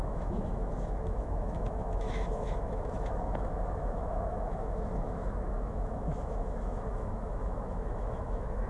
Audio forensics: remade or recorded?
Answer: remade